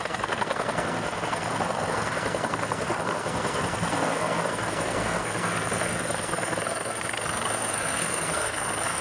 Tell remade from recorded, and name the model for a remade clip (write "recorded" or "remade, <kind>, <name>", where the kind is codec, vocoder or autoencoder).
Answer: remade, codec, SNAC